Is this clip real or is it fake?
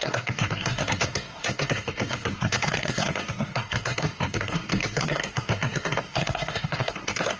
fake